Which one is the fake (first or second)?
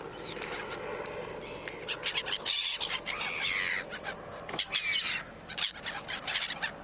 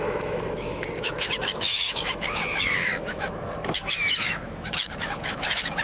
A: second